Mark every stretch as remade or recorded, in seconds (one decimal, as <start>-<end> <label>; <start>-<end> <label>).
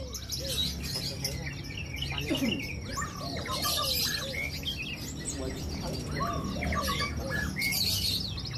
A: 0.0-8.6 recorded